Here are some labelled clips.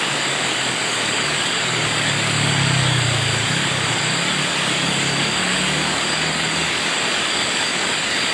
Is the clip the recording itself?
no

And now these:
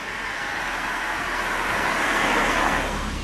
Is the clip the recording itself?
no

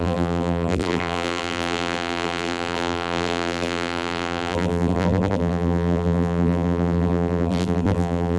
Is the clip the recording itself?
no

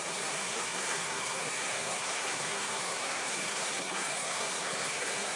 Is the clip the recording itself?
no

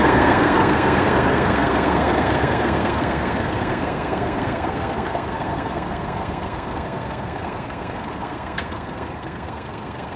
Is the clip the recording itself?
no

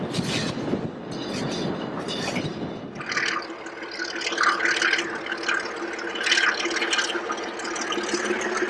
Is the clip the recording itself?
yes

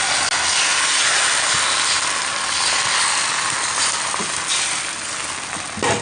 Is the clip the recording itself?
yes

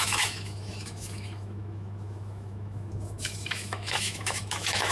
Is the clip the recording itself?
no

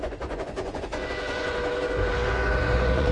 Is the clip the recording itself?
no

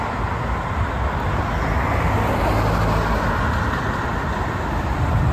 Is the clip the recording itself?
yes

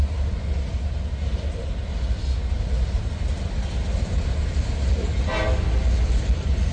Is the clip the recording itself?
yes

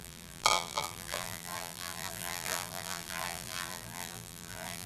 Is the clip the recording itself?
no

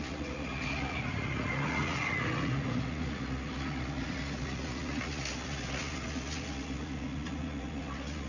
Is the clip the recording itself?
no